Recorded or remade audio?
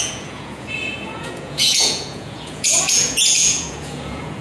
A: remade